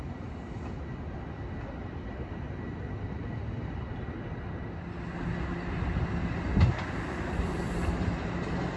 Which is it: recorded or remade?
recorded